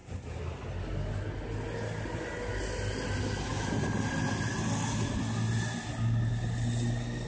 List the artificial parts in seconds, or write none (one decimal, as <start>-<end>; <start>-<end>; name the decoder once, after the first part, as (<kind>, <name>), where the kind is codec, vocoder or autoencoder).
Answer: none